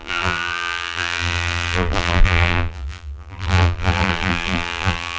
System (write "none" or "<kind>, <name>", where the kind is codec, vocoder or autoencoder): vocoder, BigVGAN v2